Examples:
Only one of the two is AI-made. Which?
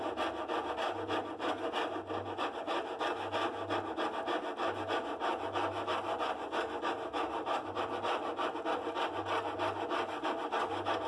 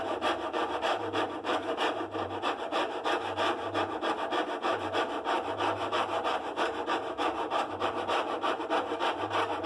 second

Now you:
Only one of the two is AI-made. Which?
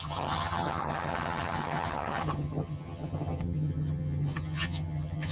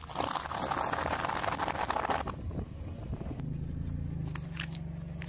first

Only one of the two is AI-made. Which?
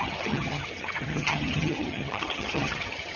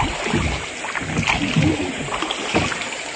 first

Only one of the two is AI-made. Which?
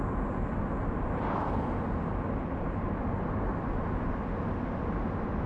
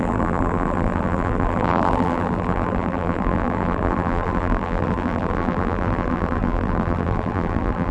second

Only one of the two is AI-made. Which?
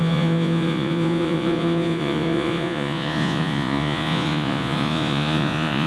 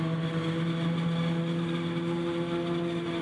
first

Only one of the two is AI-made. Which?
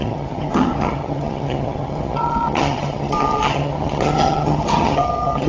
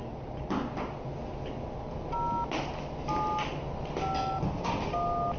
first